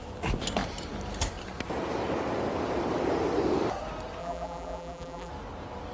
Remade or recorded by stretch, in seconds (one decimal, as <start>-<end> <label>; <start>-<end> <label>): 0.0-4.2 recorded; 4.2-5.3 remade; 5.3-5.9 recorded